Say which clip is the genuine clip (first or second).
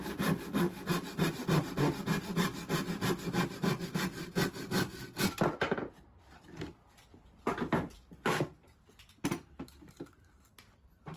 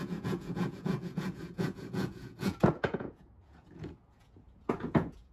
first